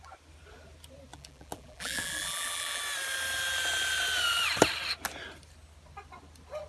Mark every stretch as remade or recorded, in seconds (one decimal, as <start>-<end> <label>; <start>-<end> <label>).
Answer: 0.0-1.1 recorded; 1.1-2.8 remade; 2.8-6.7 recorded